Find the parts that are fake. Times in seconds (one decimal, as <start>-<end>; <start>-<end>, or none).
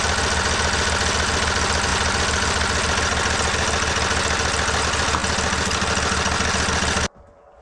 none